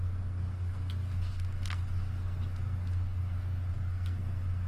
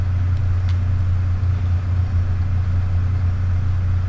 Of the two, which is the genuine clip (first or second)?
second